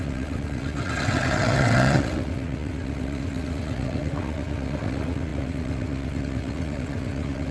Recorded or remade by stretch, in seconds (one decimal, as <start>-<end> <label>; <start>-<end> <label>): 0.0-7.5 remade

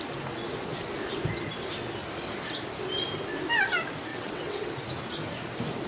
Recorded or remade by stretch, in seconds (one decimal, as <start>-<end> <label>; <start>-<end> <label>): 0.0-4.1 recorded; 4.1-4.7 remade; 4.7-5.9 recorded

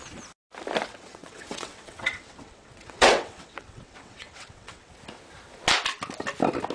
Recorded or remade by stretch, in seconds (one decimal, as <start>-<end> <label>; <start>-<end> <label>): 0.0-0.9 recorded; 0.9-4.9 remade; 4.9-6.7 recorded

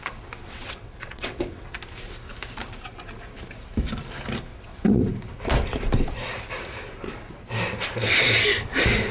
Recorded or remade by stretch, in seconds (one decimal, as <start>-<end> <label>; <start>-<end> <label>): 0.0-0.4 recorded; 0.4-1.8 remade; 1.8-4.5 recorded; 4.5-5.0 remade; 5.0-9.1 recorded

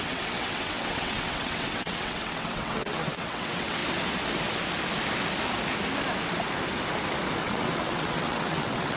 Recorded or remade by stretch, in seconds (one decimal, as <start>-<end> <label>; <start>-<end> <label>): 0.0-3.8 remade; 3.8-7.4 recorded; 7.4-9.0 remade